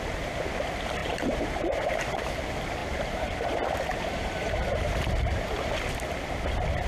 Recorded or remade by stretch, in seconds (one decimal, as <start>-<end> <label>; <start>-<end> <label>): 0.0-1.0 recorded; 1.0-2.3 remade; 2.3-2.8 recorded; 2.8-3.5 remade; 3.5-3.9 recorded; 3.9-5.5 remade; 5.5-6.9 recorded